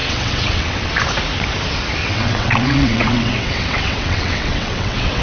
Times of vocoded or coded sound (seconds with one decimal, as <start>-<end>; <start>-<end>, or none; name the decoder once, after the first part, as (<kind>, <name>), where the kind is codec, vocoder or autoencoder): 0.0-0.9 (vocoder, WaveNeXt); 2.0-5.2